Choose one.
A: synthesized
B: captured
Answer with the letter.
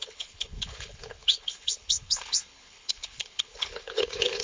A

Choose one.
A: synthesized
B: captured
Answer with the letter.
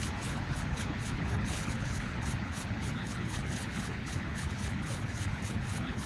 A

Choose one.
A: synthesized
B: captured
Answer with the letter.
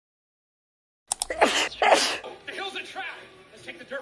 B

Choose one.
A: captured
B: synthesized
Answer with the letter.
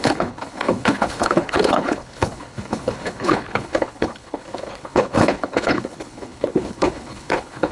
B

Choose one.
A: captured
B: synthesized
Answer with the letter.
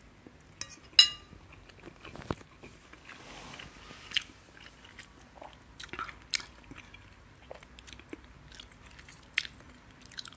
A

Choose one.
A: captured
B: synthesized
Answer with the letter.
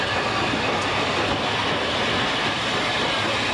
A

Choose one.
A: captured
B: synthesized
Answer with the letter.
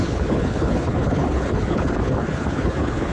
B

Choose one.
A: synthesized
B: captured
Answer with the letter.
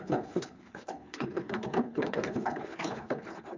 A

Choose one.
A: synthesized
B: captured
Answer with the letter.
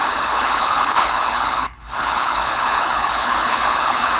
A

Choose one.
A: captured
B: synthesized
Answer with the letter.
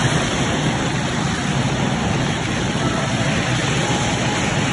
A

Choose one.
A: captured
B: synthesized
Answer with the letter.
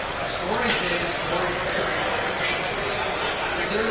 A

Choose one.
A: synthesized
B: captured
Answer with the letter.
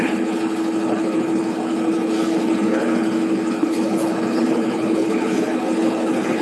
A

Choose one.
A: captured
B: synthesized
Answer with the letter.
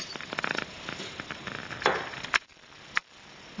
A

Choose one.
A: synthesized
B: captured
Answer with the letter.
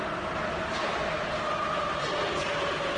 B